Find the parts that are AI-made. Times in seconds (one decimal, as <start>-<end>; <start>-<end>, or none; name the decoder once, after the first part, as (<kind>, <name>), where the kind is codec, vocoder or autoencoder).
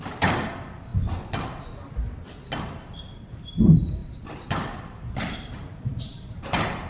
0.0-0.9 (vocoder, BigVGAN v2); 3.2-6.9